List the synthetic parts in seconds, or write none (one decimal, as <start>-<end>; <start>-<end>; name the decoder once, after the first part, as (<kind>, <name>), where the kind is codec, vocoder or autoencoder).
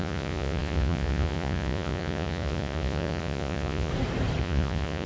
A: 0.0-3.9 (vocoder, Vocos); 4.4-5.1